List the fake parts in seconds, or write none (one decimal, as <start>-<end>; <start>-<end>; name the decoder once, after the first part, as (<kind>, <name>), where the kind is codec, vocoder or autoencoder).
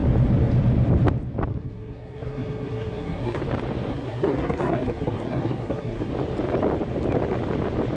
1.5-3.4 (codec, SNAC); 3.9-6.1